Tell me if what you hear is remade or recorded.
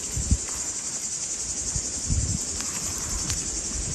recorded